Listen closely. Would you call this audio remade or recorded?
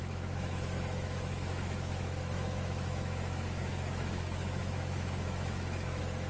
remade